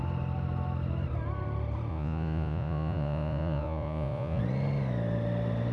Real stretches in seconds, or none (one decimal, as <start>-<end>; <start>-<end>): 0.0-1.9; 4.4-5.7